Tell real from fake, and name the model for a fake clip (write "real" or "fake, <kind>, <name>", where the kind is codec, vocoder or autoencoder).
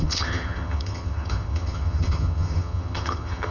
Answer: fake, vocoder, HiFi-GAN